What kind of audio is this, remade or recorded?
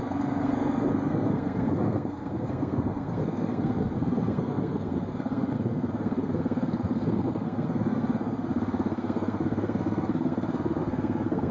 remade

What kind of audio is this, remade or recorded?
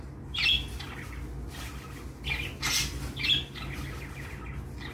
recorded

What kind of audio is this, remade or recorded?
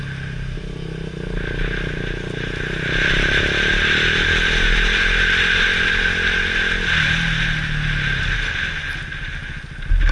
recorded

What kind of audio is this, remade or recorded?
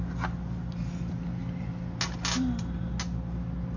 recorded